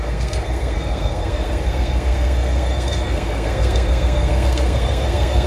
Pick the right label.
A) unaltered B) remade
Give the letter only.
B